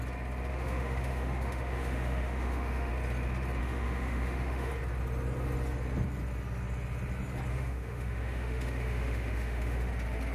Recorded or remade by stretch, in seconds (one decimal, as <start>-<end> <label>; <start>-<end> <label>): 0.0-0.5 recorded; 0.5-2.9 remade; 2.9-3.6 recorded; 3.6-4.7 remade; 4.7-7.5 recorded; 7.5-9.9 remade; 9.9-10.3 recorded